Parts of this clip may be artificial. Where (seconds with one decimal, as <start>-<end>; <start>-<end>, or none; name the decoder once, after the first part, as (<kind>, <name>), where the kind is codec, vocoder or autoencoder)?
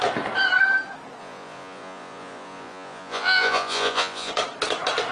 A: 1.2-4.3 (vocoder, Vocos)